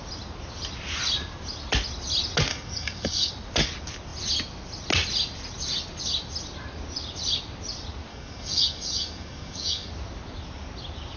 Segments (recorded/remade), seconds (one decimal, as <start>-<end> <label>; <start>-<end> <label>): 0.0-2.5 recorded; 2.5-3.3 remade; 3.3-8.1 recorded; 8.1-9.9 remade; 9.9-11.2 recorded